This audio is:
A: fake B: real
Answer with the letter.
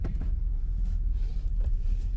A